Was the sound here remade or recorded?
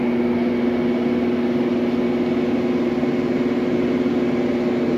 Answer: recorded